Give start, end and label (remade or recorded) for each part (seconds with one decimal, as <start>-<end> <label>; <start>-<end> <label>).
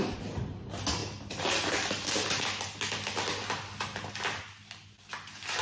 0.0-5.6 recorded